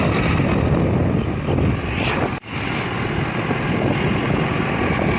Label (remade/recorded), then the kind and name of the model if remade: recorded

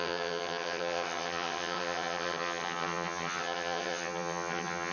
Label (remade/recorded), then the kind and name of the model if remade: remade, vocoder, HiFi-GAN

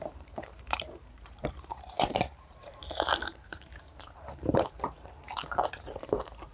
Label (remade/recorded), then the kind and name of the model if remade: remade, vocoder, BigVGAN v2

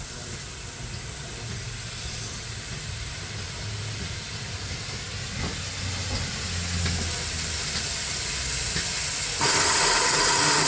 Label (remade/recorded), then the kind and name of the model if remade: recorded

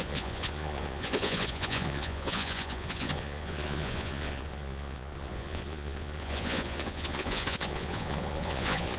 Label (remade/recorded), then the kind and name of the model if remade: remade, vocoder, Vocos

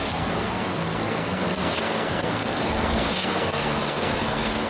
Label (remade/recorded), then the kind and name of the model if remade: remade, codec, SNAC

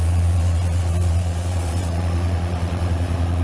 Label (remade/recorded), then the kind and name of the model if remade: remade, vocoder, Vocos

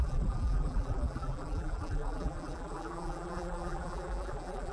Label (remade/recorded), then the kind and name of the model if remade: remade, vocoder, BigVGAN v2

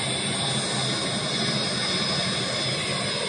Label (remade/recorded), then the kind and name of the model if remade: recorded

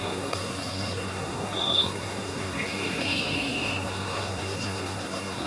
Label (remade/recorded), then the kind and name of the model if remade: remade, codec, SNAC